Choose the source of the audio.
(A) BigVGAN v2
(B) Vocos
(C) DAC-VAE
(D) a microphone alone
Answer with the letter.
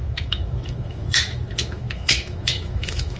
C